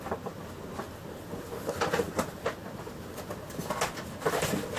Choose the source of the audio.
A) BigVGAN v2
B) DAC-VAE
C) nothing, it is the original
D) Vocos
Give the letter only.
C